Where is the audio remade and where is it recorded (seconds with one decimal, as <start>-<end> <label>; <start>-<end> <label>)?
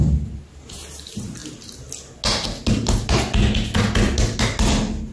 0.0-5.1 recorded